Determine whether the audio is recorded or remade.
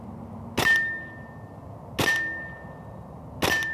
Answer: recorded